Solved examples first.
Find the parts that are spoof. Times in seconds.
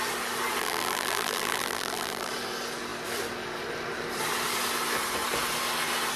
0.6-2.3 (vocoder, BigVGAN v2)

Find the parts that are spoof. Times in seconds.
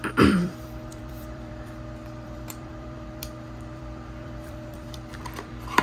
0.0-5.8 (vocoder, BigVGAN v2)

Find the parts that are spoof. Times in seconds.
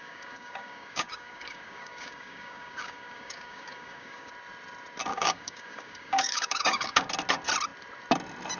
0.0-4.3 (codec, DAC); 5.1-7.1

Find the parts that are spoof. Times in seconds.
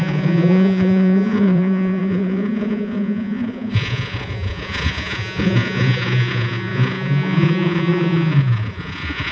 0.0-9.3 (vocoder, Vocos)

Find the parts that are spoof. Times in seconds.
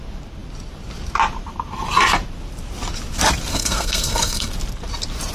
3.5-4.5 (codec, SNAC)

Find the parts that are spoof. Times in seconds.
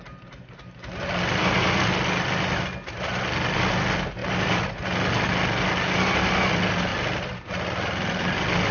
none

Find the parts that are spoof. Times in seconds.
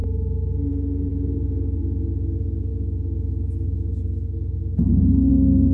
1.1-1.8 (codec, DAC); 2.7-5.3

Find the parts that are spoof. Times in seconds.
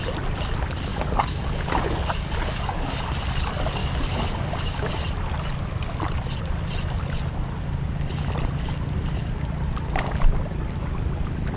0.9-3.0 (codec, DAC); 3.8-4.9